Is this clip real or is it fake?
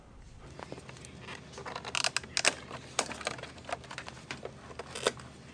real